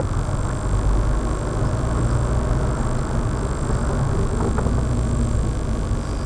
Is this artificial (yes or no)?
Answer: no